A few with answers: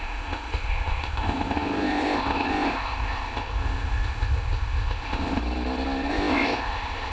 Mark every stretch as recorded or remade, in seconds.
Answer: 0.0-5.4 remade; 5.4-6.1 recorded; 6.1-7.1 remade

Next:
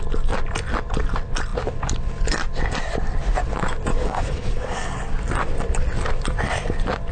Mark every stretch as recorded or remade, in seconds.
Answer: 0.0-3.9 recorded; 3.9-5.0 remade; 5.0-7.1 recorded

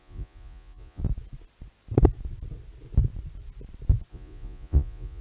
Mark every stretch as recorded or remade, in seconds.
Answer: 0.0-1.0 remade; 1.0-4.1 recorded; 4.1-5.2 remade

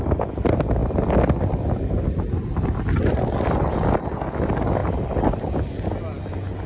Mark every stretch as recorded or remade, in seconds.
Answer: 0.0-6.7 recorded